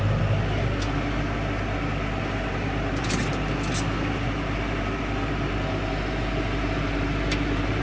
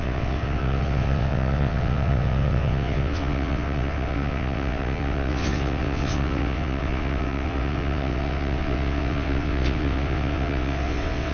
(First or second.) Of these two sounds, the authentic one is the first